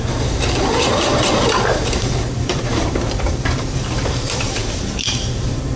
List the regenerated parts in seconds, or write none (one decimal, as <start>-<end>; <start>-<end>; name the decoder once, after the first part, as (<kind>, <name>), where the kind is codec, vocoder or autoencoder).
0.0-5.8 (vocoder, BigVGAN v2)